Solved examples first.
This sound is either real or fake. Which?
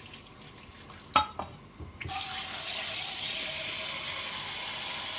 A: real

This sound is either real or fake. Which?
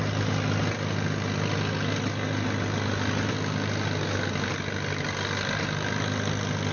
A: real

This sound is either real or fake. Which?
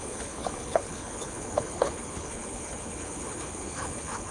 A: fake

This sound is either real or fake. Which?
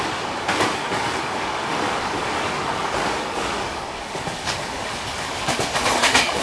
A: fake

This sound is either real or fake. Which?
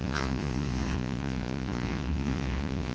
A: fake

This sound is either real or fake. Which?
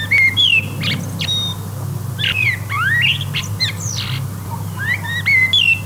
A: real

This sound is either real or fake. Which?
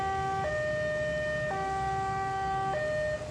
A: real